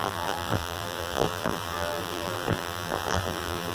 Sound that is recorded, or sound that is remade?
remade